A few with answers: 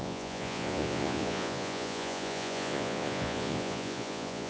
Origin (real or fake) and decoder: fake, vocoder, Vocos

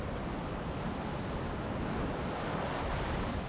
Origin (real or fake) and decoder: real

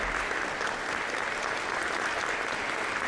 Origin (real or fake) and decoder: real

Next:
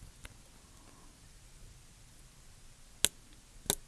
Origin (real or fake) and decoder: real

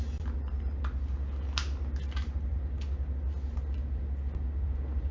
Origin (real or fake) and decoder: real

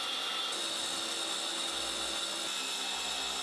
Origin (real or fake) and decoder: real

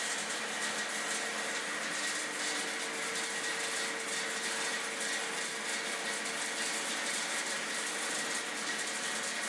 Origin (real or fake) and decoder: real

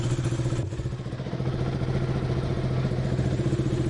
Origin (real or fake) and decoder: real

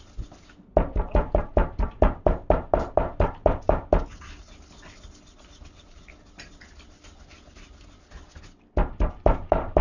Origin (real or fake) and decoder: real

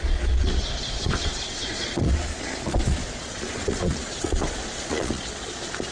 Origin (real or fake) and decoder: fake, vocoder, Vocos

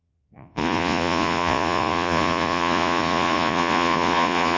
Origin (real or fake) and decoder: fake, vocoder, Vocos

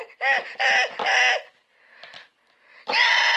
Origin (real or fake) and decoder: real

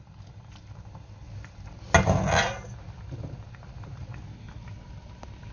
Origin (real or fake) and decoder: real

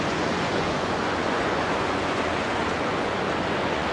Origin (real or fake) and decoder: fake, vocoder, Vocos